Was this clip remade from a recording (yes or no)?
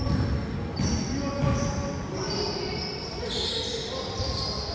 no